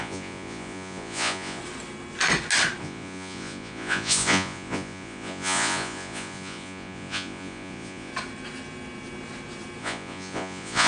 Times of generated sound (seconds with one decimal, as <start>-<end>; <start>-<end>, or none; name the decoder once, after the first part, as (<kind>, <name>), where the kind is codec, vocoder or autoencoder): 0.0-1.6 (vocoder, Vocos); 2.8-8.1; 9.8-10.9